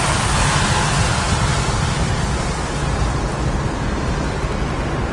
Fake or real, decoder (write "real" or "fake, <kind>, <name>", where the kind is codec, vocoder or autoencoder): real